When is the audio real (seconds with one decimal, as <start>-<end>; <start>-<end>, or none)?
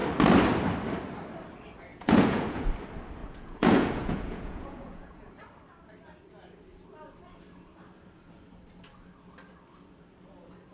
0.0-1.9; 2.7-3.2; 5.4-10.7